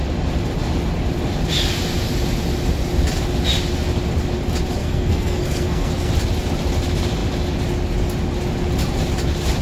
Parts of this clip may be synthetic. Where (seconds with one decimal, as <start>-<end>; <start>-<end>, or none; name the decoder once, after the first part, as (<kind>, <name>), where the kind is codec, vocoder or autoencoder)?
4.8-6.1 (codec, SNAC)